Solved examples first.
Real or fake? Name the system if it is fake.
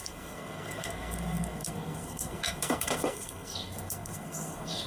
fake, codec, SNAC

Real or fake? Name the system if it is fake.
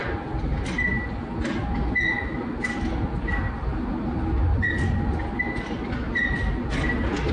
real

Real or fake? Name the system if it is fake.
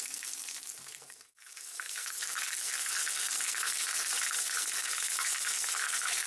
fake, codec, SNAC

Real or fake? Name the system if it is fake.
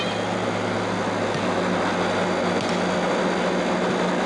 real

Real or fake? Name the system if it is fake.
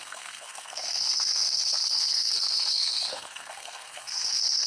fake, codec, SNAC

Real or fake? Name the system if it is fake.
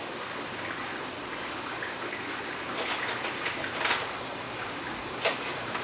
real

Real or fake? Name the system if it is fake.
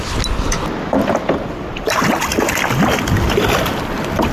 real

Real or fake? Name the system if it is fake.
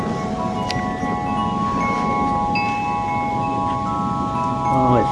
real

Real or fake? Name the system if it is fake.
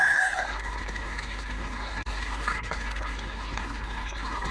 fake, codec, SNAC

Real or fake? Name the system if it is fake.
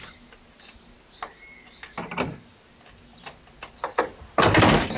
real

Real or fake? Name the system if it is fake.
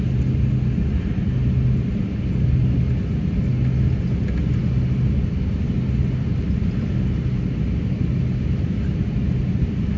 real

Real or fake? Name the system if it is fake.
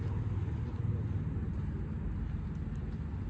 real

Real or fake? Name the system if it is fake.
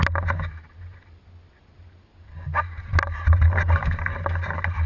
real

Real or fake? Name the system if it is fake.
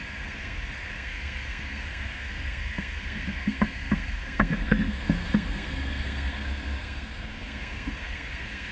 fake, codec, SNAC